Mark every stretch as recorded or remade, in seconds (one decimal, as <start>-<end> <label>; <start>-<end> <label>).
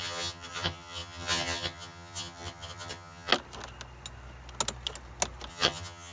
0.0-3.3 remade; 3.3-5.5 recorded; 5.5-6.1 remade